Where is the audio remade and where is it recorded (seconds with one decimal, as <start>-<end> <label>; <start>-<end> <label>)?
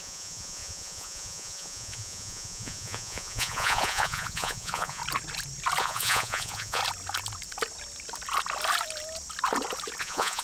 0.0-5.0 remade; 5.0-5.8 recorded; 5.8-6.8 remade; 6.8-10.0 recorded; 10.0-10.4 remade